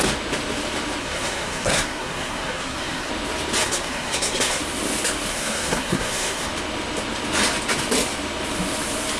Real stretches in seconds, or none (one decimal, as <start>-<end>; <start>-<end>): 0.0-1.0; 3.1-3.6; 4.6-5.3; 6.5-9.2